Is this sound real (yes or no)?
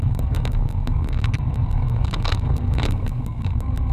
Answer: no